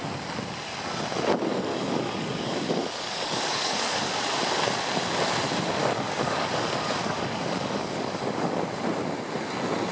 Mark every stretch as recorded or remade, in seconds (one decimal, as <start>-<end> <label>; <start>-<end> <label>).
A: 0.0-1.7 recorded; 1.7-4.1 remade; 4.1-5.8 recorded; 5.8-8.5 remade; 8.5-9.9 recorded